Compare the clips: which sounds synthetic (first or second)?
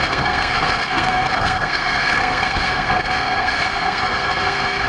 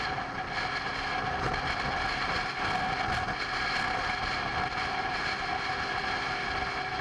first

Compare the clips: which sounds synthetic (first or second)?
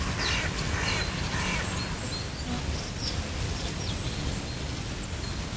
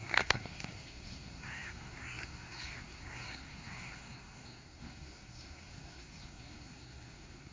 second